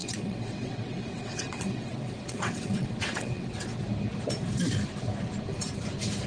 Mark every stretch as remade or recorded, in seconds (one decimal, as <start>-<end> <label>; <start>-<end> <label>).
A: 0.0-3.8 remade; 3.8-6.3 recorded